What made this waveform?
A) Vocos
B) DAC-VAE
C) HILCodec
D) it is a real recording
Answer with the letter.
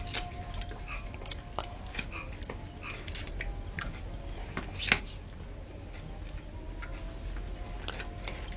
D